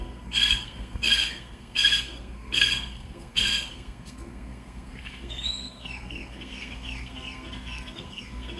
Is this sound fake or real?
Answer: fake